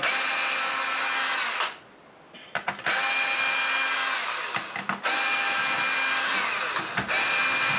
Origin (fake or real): real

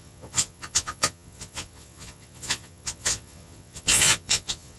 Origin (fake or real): fake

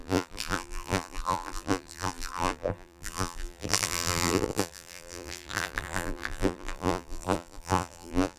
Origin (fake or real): fake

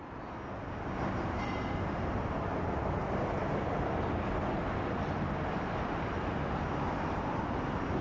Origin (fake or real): real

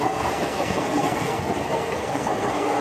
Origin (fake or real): fake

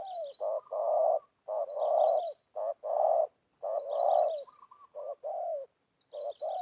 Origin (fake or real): real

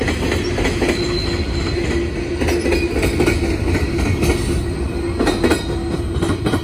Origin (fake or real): real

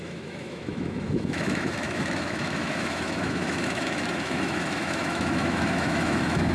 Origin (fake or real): fake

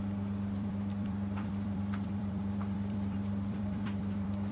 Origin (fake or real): fake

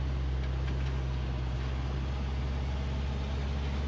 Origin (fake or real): real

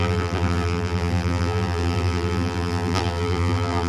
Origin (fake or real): fake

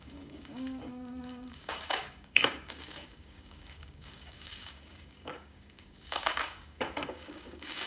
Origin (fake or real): fake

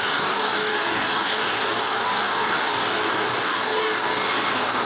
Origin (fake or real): fake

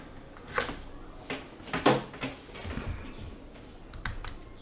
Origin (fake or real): real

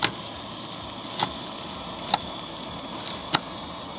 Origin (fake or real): real